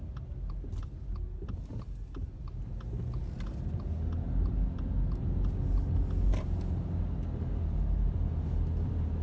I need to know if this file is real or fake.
real